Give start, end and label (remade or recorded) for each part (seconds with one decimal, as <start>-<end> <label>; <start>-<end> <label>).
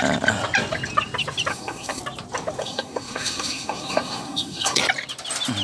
0.0-1.5 recorded; 1.5-2.0 remade; 2.0-2.6 recorded; 2.6-4.8 remade; 4.8-5.6 recorded